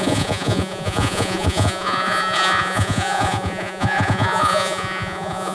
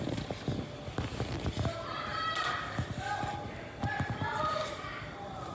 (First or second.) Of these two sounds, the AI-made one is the first